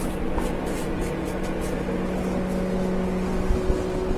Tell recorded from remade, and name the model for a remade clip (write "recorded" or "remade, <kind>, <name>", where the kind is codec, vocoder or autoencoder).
recorded